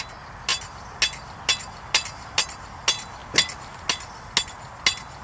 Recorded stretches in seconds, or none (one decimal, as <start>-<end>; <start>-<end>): 0.0-5.2